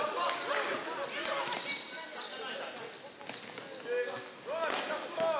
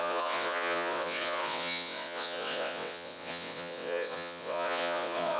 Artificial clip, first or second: second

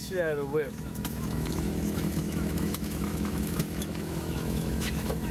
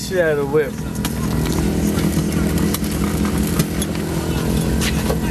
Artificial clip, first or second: first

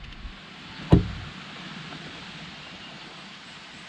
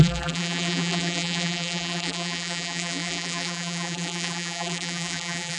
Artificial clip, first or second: second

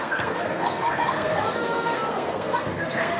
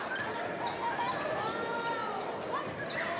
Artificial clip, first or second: first